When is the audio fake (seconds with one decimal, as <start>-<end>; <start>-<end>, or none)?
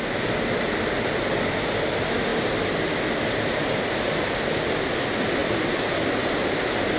none